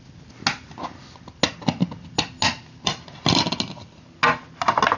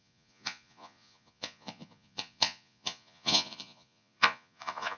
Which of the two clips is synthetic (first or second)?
second